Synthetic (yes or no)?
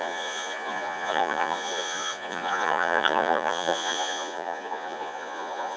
yes